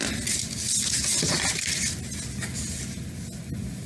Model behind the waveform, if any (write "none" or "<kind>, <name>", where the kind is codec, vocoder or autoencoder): none